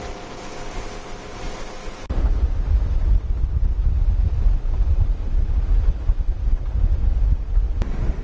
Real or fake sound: real